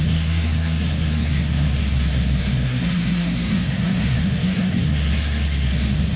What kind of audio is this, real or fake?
fake